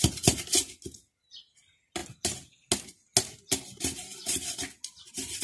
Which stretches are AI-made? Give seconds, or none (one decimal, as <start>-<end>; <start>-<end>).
none